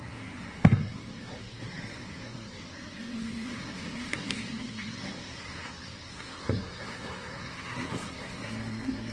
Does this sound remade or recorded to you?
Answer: remade